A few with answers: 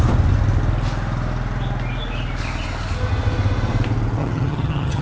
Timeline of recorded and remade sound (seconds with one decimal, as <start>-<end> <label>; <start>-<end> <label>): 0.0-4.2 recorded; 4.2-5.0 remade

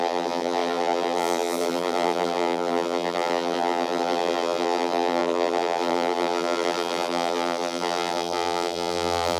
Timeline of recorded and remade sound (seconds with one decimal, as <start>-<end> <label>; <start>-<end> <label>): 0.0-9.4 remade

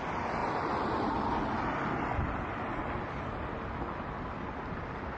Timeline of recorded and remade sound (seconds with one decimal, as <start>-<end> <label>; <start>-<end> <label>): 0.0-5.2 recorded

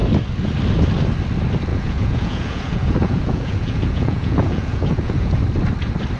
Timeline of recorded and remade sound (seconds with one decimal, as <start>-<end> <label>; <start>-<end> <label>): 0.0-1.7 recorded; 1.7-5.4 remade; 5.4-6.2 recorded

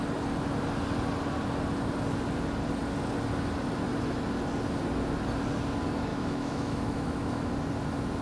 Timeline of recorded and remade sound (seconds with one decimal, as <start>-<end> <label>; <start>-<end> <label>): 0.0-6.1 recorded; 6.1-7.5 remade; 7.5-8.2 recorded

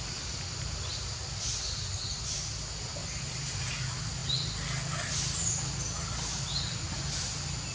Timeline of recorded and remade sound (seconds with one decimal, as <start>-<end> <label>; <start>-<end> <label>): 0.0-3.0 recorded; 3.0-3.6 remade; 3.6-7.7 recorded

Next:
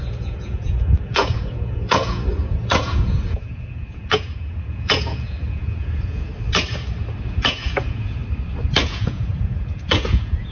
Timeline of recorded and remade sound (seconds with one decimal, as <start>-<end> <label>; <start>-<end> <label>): 0.0-6.3 remade; 6.3-7.2 recorded; 7.2-8.2 remade; 8.2-8.8 recorded; 8.8-10.5 remade